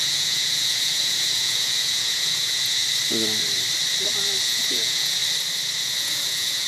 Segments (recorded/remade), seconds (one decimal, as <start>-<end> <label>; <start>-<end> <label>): 0.0-2.8 remade; 2.8-4.4 recorded; 4.4-5.2 remade; 5.2-5.8 recorded; 5.8-6.7 remade